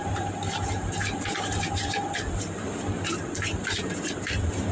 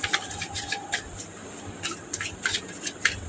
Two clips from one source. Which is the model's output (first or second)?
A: second